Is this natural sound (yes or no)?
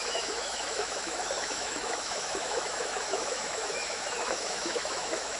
no